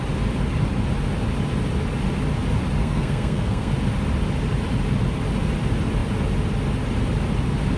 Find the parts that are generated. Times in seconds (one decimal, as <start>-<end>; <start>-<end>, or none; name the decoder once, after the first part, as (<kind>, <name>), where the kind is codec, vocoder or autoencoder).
2.8-3.7 (codec, SNAC)